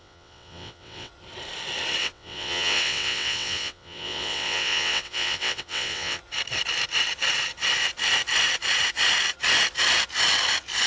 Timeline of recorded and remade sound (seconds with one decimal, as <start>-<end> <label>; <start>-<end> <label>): 0.0-1.1 remade; 1.1-2.0 recorded; 2.0-6.2 remade; 6.2-10.9 recorded